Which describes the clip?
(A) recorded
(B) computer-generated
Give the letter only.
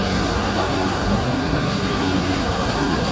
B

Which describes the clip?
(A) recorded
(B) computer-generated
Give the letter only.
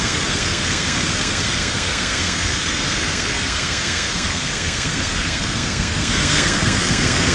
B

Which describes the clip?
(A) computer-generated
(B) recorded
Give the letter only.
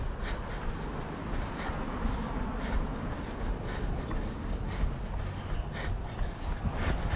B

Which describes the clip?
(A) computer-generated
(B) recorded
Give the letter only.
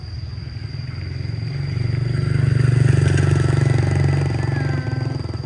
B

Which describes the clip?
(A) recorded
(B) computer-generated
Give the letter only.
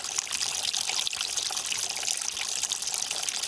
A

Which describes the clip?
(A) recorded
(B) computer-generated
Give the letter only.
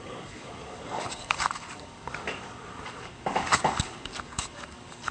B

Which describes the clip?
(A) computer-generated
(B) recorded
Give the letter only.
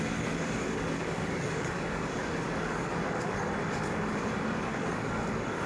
A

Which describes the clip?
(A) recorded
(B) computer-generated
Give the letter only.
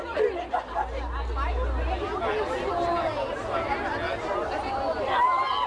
A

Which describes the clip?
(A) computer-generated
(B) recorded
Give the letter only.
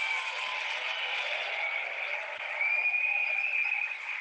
B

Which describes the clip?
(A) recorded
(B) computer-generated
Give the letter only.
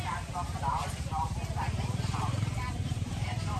B